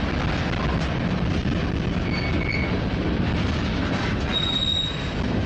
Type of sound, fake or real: real